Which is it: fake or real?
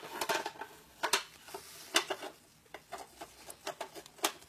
real